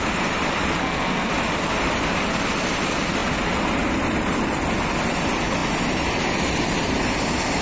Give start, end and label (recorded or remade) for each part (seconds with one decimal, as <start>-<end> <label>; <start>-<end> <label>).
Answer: 0.0-0.8 recorded; 0.8-1.3 remade; 1.3-7.6 recorded